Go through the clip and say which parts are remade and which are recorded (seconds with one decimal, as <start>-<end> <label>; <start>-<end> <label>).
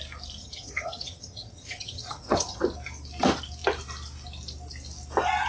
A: 0.0-0.4 recorded; 0.4-2.6 remade; 2.6-5.5 recorded